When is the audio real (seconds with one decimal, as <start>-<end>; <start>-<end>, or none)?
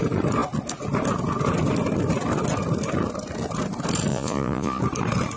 0.0-4.1; 4.8-5.4